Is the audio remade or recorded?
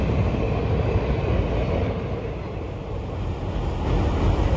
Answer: recorded